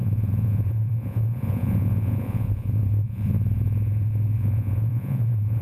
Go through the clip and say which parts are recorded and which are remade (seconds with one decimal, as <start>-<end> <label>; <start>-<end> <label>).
0.0-5.6 remade